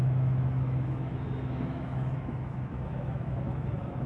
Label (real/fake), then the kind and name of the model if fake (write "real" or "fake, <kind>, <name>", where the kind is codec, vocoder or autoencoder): fake, autoencoder, DAC-VAE